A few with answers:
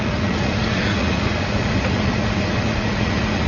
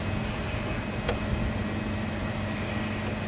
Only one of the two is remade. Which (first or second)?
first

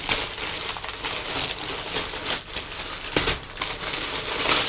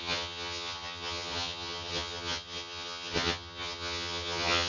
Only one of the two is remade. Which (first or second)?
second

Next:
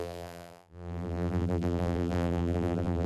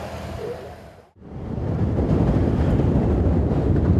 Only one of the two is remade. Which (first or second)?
first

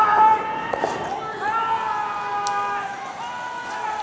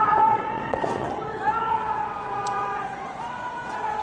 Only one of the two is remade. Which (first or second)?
second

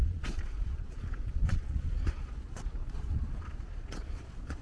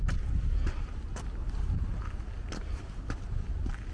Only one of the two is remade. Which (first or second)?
first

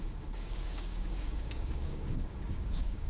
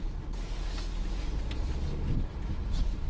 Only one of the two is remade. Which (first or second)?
first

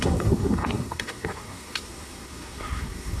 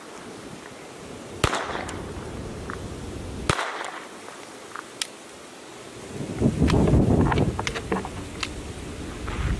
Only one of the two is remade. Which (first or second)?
first